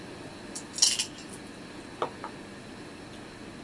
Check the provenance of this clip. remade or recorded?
recorded